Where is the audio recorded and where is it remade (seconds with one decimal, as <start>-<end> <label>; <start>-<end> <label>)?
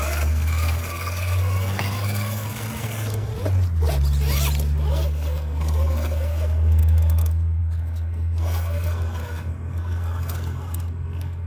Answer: 0.0-3.3 remade; 3.3-4.9 recorded; 4.9-11.5 remade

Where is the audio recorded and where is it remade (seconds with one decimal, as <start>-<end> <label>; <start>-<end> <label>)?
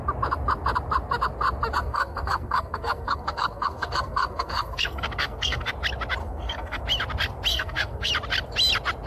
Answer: 0.0-1.8 recorded; 1.8-5.7 remade; 5.7-6.2 recorded; 6.2-6.8 remade; 6.8-7.5 recorded; 7.5-8.1 remade; 8.1-9.1 recorded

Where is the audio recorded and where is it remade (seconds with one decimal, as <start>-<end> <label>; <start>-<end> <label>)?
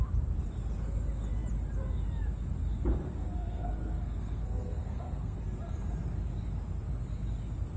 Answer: 0.0-3.2 recorded; 3.2-5.4 remade; 5.4-7.8 recorded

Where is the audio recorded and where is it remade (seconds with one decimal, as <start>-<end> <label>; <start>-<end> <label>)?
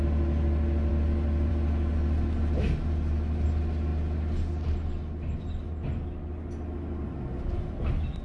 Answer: 0.0-8.2 recorded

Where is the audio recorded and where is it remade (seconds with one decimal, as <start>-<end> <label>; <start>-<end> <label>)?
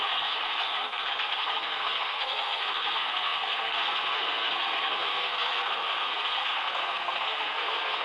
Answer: 0.0-8.0 remade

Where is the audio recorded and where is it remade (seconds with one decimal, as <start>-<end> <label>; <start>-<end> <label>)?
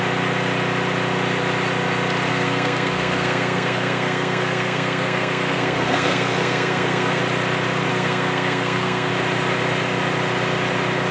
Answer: 0.0-2.3 recorded; 2.3-7.2 remade; 7.2-7.9 recorded; 7.9-9.1 remade; 9.1-11.1 recorded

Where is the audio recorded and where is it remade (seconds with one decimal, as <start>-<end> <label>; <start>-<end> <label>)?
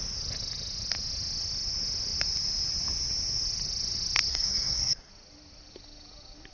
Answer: 0.0-4.3 recorded; 4.3-5.1 remade; 5.1-6.5 recorded